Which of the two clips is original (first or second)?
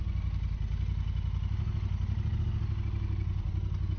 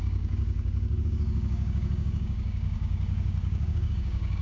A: first